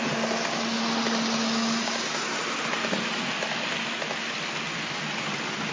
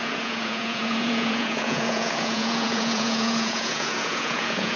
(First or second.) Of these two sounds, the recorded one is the first